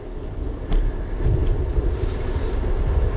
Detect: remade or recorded recorded